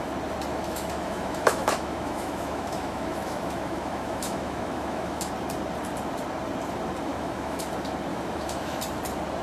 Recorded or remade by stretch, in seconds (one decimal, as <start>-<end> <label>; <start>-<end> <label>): 0.0-0.5 recorded; 0.5-5.3 remade; 5.3-7.1 recorded; 7.1-7.6 remade; 7.6-8.1 recorded; 8.1-8.8 remade; 8.8-9.4 recorded